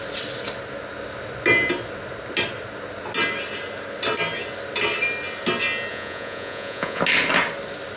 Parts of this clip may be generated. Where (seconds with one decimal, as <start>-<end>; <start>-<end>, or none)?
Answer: 5.9-7.0